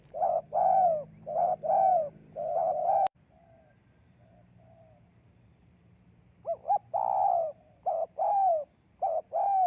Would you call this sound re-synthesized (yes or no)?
yes